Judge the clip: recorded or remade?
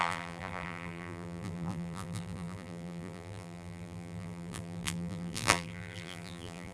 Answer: remade